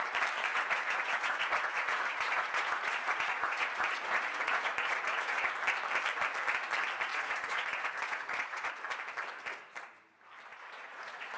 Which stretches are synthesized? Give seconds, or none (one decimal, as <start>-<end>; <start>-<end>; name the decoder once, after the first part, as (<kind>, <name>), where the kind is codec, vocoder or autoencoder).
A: 0.5-5.5 (vocoder, Vocos); 7.1-8.7; 10.5-11.4